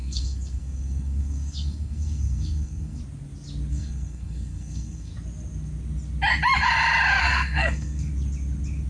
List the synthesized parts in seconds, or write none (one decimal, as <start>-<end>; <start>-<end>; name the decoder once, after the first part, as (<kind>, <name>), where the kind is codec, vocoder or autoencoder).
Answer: 0.0-3.0 (codec, SNAC); 3.7-5.1; 7.2-8.1